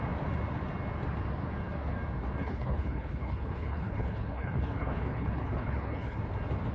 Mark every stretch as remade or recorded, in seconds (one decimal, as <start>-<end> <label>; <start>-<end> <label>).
0.0-2.4 recorded; 2.4-6.2 remade; 6.2-6.7 recorded